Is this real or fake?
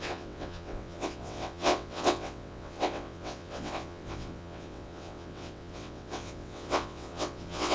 fake